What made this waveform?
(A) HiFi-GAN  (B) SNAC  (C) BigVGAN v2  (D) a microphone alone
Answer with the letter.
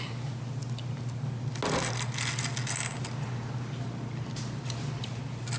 D